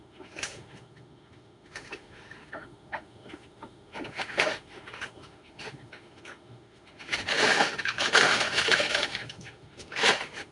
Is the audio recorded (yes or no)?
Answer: no